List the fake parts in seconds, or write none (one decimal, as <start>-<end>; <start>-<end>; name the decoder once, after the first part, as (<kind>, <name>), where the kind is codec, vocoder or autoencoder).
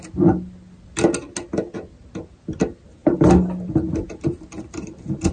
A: none